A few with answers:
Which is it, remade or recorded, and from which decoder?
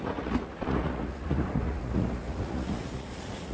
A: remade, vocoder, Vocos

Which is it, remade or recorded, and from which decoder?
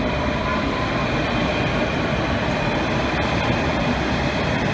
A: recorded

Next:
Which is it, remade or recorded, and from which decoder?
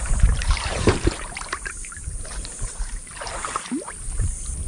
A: remade, vocoder, BigVGAN v2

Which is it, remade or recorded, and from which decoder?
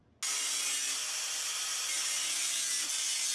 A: recorded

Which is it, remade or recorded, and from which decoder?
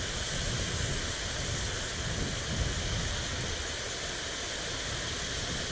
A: recorded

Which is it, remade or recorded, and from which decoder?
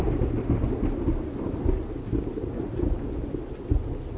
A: recorded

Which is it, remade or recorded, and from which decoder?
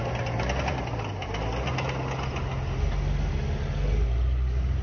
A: recorded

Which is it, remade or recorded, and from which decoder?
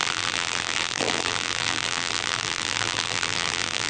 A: remade, vocoder, BigVGAN v2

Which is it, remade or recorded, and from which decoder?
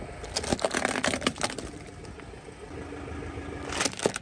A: recorded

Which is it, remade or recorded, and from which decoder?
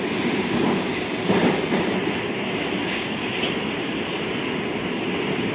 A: recorded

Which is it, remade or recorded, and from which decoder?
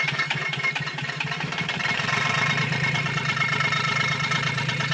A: remade, vocoder, BigVGAN v2